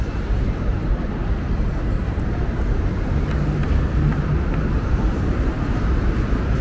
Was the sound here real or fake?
fake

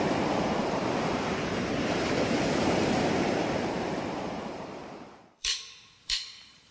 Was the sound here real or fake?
fake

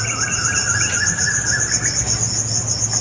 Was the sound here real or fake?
real